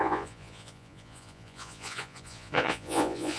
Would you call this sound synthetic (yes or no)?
yes